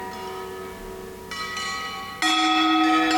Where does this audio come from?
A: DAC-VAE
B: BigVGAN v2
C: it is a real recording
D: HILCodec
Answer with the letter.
C